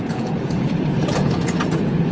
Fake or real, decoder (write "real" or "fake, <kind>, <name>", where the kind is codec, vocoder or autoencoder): fake, vocoder, Vocos